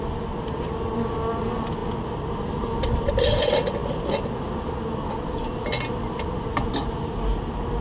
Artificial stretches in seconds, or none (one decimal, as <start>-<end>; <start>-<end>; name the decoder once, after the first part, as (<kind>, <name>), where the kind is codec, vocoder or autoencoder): none